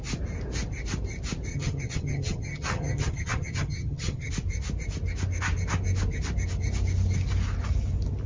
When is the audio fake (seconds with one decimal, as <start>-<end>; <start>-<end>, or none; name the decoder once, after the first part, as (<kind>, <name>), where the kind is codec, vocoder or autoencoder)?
1.5-4.3 (vocoder, HiFi-GAN)